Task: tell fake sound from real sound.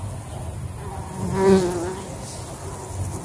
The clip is real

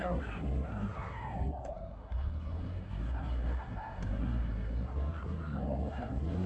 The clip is fake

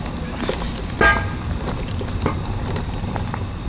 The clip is real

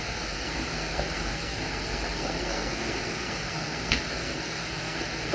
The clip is fake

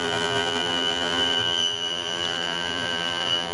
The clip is fake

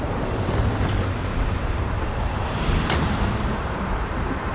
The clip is fake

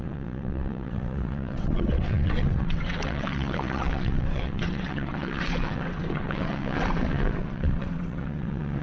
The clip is fake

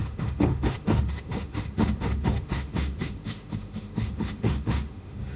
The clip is fake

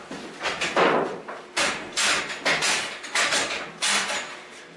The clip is real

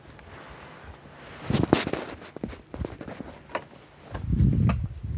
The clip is real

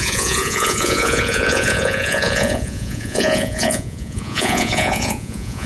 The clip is fake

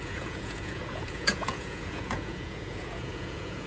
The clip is fake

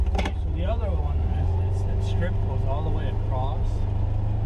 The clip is real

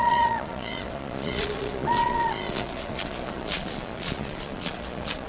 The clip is fake